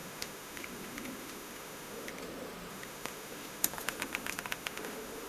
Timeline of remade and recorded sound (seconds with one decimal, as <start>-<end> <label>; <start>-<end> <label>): 0.0-2.1 remade; 2.1-2.7 recorded; 2.7-5.3 remade

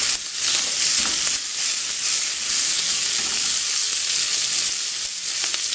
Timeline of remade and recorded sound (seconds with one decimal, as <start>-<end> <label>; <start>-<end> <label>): 0.0-5.7 recorded

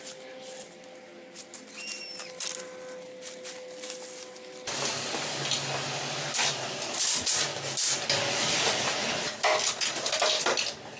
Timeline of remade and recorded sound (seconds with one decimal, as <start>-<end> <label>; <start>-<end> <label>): 0.0-11.0 recorded

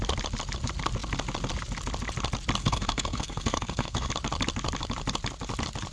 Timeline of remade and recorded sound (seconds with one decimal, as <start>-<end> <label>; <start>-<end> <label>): 0.0-2.6 recorded; 2.6-4.1 remade; 4.1-5.9 recorded

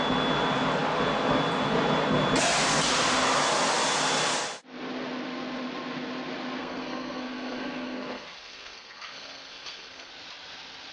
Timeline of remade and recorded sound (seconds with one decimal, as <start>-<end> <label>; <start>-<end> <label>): 0.0-6.6 recorded; 6.6-10.1 remade; 10.1-10.9 recorded

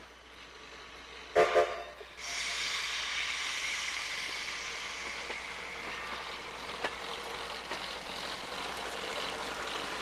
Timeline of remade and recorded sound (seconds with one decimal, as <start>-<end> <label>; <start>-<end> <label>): 0.0-3.1 recorded; 3.1-4.6 remade; 4.6-10.0 recorded

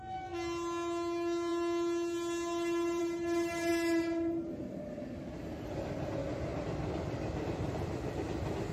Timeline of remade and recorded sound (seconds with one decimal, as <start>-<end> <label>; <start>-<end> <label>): 0.0-8.7 recorded

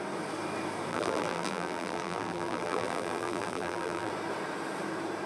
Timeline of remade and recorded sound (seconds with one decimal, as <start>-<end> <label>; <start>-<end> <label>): 0.0-0.9 recorded; 0.9-4.1 remade; 4.1-5.3 recorded